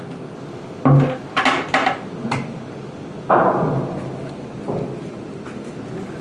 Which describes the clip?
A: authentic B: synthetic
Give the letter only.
A